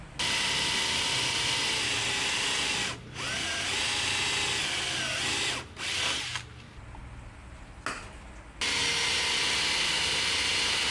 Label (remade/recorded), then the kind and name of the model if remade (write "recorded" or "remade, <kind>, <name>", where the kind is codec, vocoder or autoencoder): recorded